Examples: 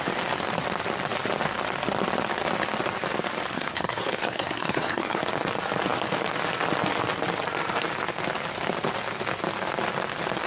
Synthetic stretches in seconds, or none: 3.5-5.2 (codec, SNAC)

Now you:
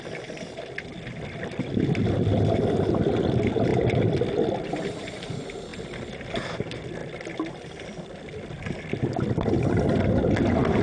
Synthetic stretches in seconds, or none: 3.7-5.3 (vocoder, BigVGAN v2); 7.0-8.7

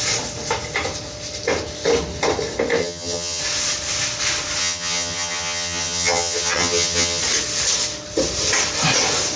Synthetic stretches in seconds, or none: 2.8-3.4 (vocoder, HiFi-GAN); 4.6-7.2

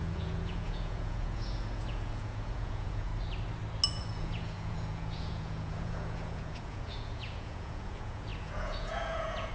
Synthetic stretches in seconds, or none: 0.0-3.1 (vocoder, Vocos); 4.0-9.5

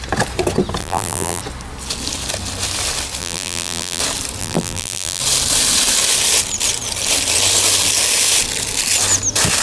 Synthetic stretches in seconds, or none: 0.8-1.4 (vocoder, BigVGAN v2); 3.2-4.0; 4.4-5.2

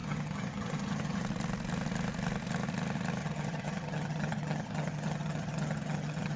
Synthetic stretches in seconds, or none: 0.0-1.2 (vocoder, HiFi-GAN); 3.2-6.4

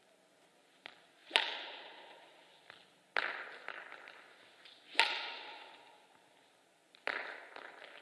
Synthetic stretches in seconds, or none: none